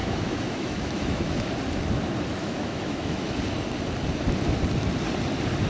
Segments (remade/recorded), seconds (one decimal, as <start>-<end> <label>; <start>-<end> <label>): 0.0-1.5 remade; 1.5-2.4 recorded; 2.4-3.4 remade; 3.4-5.7 recorded